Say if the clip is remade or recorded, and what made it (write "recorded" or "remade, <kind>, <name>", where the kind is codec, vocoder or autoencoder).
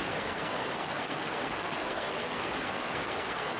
remade, codec, SNAC